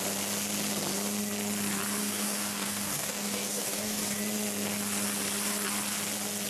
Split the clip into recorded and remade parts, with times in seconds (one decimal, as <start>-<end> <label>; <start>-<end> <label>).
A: 0.0-2.0 recorded; 2.0-4.2 remade; 4.2-6.5 recorded